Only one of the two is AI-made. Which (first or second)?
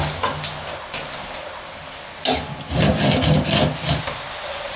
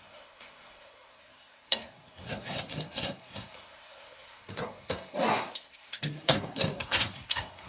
second